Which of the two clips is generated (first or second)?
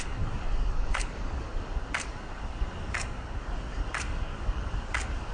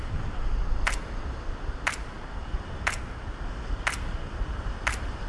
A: first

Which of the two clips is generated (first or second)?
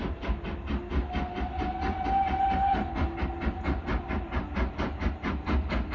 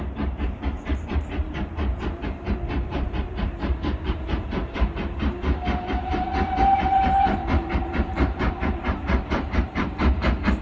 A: second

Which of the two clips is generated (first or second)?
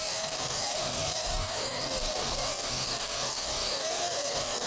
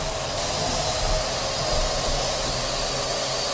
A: first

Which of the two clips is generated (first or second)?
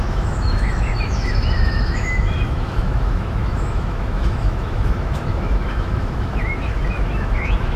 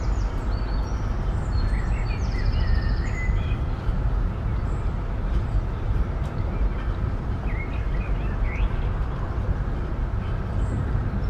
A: first